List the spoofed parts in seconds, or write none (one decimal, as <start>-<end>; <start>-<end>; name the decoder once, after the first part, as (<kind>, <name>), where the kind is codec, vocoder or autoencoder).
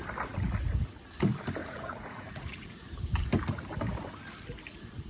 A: 1.6-2.7 (vocoder, Vocos)